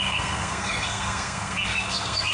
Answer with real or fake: fake